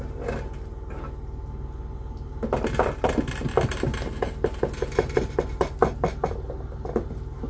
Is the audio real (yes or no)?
yes